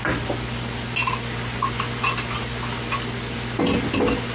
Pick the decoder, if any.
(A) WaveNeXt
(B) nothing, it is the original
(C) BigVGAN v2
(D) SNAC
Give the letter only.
B